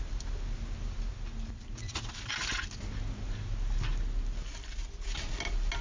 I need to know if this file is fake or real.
real